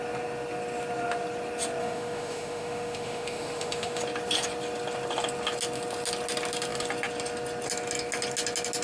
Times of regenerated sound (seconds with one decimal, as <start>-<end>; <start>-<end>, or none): 1.8-4.0